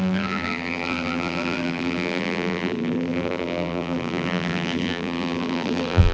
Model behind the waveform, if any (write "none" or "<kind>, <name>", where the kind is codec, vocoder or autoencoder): vocoder, BigVGAN v2